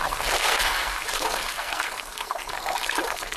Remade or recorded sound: remade